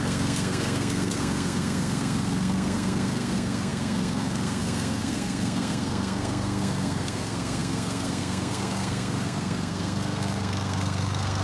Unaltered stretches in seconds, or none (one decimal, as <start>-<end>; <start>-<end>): none